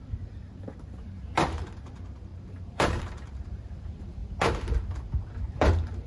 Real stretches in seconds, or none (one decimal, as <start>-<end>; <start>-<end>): 4.2-5.5